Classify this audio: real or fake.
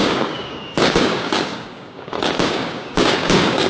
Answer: fake